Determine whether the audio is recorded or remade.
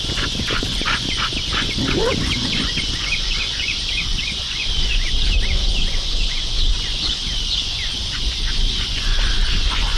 remade